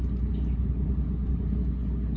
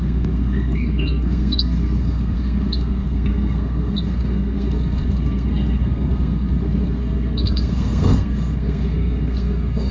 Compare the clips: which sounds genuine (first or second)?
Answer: first